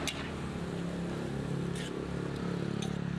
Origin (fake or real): real